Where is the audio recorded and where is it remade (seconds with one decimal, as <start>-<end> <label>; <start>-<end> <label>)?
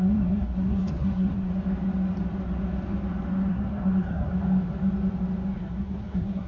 0.0-1.5 remade; 1.5-3.5 recorded; 3.5-4.3 remade; 4.3-5.6 recorded; 5.6-6.5 remade